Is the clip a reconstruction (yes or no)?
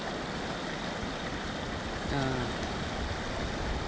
no